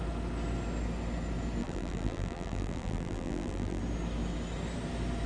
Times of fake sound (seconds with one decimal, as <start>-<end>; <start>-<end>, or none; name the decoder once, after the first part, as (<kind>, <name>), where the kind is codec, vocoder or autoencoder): 1.6-3.8 (vocoder, BigVGAN v2)